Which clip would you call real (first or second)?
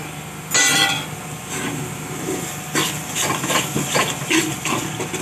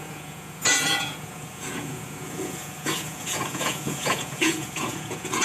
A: first